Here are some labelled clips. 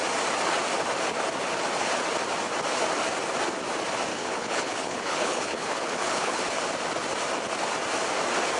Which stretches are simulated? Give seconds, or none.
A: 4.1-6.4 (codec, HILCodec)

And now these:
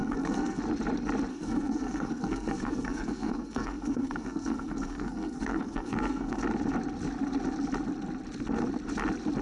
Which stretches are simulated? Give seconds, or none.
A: 0.0-0.6 (codec, SNAC); 1.3-6.4

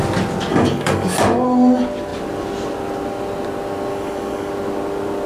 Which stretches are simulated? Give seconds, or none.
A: 0.5-1.2 (codec, DAC); 3.9-4.5